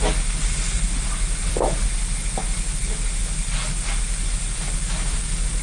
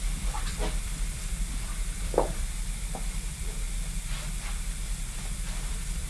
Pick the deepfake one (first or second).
second